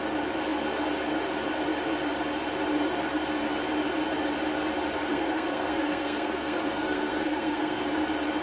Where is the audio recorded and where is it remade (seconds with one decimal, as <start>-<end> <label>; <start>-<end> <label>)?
0.0-5.1 recorded; 5.1-7.8 remade; 7.8-8.4 recorded